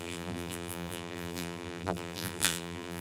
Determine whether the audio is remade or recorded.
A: remade